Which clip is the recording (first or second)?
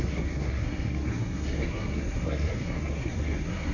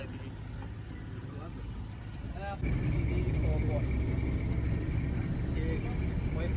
second